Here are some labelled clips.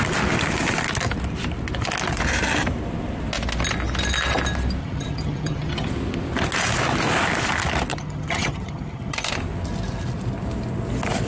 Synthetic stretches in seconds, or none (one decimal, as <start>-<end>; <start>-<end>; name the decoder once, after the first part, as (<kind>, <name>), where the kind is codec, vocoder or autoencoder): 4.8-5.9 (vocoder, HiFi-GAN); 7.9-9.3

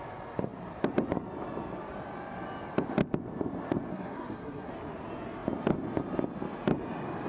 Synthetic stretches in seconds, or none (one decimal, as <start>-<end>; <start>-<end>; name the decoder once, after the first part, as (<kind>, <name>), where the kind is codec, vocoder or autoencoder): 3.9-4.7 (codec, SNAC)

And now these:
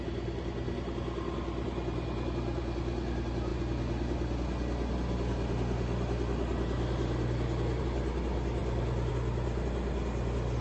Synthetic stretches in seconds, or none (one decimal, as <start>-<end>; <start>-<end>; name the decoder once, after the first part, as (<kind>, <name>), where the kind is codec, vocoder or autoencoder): none